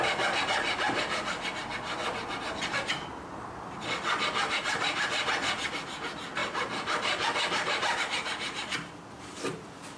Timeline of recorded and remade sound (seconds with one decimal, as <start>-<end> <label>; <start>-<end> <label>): 0.0-6.4 recorded; 6.4-8.0 remade; 8.0-10.0 recorded